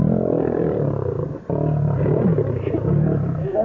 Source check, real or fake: real